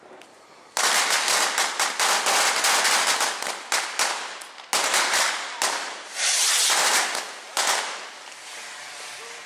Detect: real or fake real